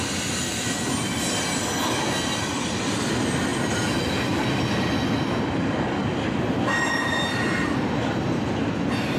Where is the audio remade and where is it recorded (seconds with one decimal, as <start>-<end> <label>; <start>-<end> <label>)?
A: 0.0-9.2 recorded